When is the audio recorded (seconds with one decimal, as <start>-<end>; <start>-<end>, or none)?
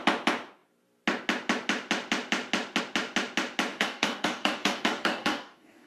0.0-3.7